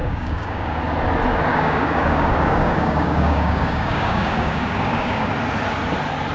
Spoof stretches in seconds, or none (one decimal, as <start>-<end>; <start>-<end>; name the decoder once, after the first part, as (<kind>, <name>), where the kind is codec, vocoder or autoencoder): 0.0-0.8 (codec, DAC); 1.5-5.3